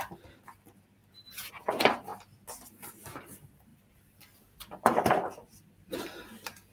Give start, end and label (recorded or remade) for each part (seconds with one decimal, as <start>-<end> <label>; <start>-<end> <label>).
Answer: 0.0-1.0 recorded; 1.0-1.5 remade; 1.5-3.7 recorded; 3.7-5.9 remade; 5.9-6.7 recorded